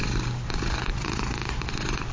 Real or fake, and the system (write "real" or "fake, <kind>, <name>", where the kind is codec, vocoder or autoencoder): fake, vocoder, BigVGAN v2